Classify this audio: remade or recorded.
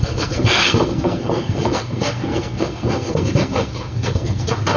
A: remade